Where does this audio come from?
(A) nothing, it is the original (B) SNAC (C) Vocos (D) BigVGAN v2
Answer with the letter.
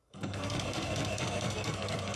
B